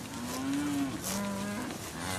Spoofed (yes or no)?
no